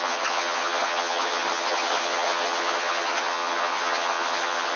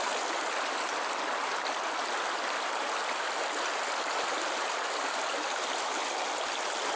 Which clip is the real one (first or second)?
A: second